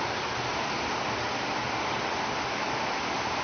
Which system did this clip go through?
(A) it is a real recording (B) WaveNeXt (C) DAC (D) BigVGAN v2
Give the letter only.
A